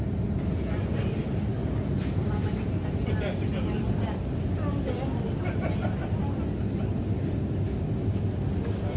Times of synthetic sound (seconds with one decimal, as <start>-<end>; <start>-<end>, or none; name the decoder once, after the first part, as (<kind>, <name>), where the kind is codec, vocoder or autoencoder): none